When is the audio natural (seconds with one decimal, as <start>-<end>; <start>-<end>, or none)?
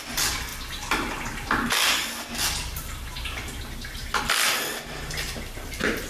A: 0.0-6.1